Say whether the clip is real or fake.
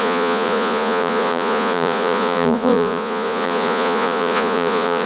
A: fake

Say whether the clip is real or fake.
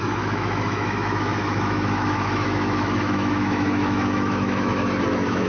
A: fake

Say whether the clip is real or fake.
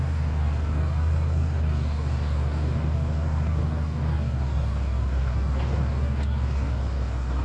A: fake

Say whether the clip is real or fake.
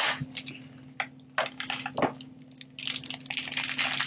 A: real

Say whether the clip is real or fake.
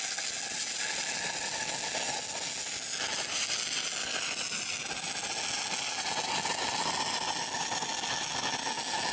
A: real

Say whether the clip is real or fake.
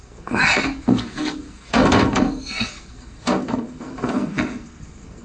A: fake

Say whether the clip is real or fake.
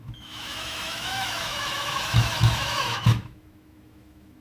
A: fake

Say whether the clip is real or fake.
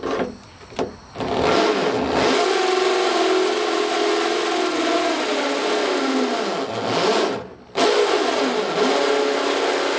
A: real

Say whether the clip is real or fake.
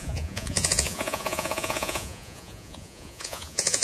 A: fake